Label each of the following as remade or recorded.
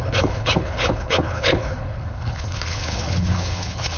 remade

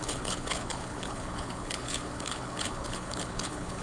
remade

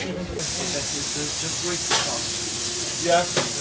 recorded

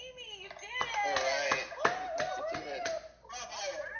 recorded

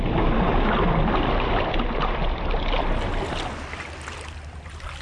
recorded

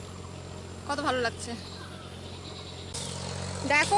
recorded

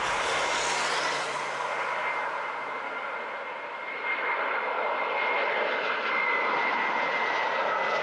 recorded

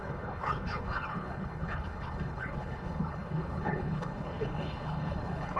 remade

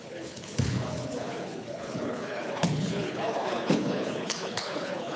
remade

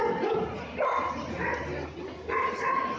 recorded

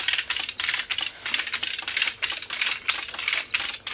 recorded